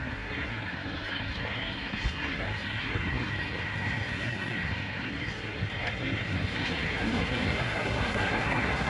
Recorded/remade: remade